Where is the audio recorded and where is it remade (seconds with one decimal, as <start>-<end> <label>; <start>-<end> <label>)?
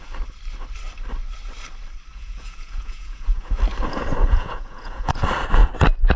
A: 0.0-2.1 recorded; 2.1-3.6 remade; 3.6-4.2 recorded; 4.2-5.1 remade; 5.1-6.2 recorded